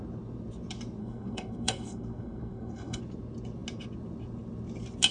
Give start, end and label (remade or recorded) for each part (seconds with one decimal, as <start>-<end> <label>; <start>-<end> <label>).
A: 0.0-1.0 recorded; 1.0-3.0 remade; 3.0-5.1 recorded